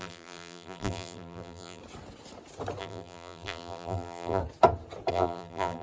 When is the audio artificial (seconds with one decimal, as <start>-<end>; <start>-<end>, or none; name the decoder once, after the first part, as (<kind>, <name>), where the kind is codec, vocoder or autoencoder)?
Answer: 0.0-1.8 (vocoder, BigVGAN v2); 2.8-4.4; 5.1-5.8